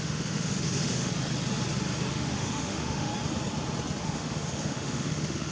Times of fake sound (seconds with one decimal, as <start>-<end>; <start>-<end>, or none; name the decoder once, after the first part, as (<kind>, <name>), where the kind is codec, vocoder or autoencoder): 0.0-1.1 (autoencoder, DAC-VAE); 2.1-3.1; 4.0-5.5